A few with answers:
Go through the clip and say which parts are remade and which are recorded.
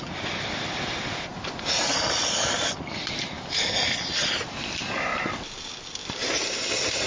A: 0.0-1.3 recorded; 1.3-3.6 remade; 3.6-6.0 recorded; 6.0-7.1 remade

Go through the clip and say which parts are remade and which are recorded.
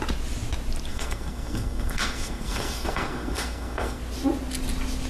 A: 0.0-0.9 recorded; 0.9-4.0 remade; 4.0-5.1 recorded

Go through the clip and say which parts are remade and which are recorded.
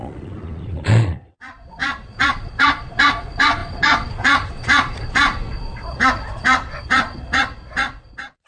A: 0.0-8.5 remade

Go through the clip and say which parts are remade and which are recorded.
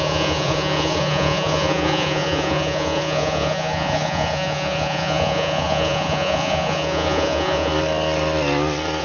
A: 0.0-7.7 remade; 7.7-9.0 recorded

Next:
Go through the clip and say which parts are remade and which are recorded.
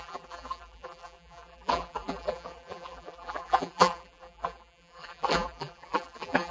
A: 0.0-6.5 remade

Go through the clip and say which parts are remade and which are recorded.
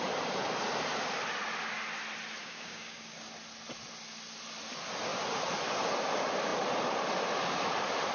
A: 0.0-2.4 recorded; 2.4-3.3 remade; 3.3-8.1 recorded